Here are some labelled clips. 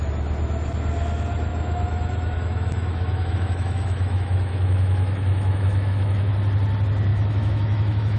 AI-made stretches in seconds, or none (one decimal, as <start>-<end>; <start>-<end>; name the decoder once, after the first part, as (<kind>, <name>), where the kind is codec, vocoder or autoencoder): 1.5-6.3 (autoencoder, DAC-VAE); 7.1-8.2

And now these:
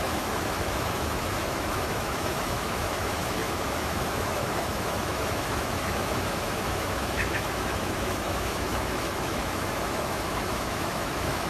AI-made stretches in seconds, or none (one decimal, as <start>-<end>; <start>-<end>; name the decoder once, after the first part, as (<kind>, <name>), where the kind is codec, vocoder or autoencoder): 0.0-11.5 (autoencoder, DAC-VAE)

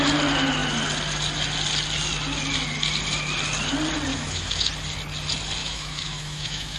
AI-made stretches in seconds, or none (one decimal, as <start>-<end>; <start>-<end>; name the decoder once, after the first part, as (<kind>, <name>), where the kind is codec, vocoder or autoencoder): 4.1-4.7 (autoencoder, DAC-VAE); 5.6-6.8